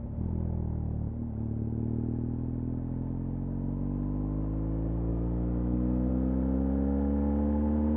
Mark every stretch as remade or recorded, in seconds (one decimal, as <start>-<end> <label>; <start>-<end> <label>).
0.0-8.0 recorded